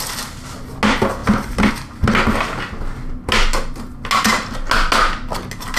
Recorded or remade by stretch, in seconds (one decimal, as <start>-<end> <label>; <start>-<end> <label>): 0.0-5.8 recorded